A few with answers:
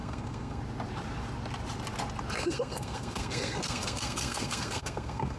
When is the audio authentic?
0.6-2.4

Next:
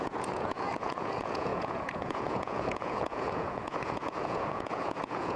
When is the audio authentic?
none

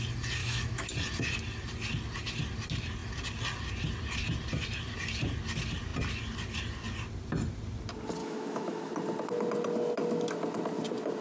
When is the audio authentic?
0.0-0.4; 0.9-8.2; 8.9-11.2

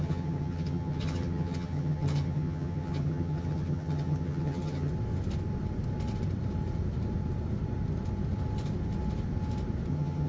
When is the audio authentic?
4.9-9.9

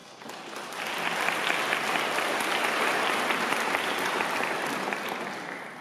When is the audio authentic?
0.0-5.8

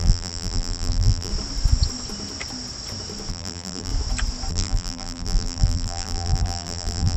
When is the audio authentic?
1.3-3.3; 3.9-4.5